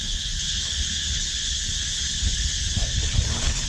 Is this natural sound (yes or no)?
no